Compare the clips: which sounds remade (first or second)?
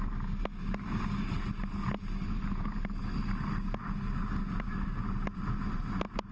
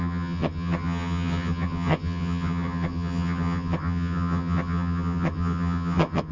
second